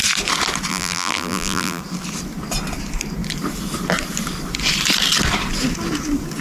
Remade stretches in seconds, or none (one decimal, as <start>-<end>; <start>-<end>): 0.7-1.8